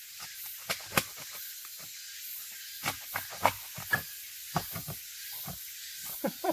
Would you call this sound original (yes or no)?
yes